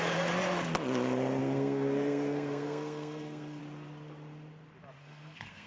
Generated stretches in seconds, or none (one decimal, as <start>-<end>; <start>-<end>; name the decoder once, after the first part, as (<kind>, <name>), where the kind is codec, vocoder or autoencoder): 1.4-3.6 (codec, SNAC); 5.0-5.7